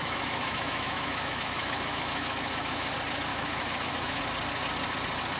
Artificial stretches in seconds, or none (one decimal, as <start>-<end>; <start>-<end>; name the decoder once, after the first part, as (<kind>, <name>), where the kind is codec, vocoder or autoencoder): 0.0-2.9 (autoencoder, DAC-VAE); 3.3-4.2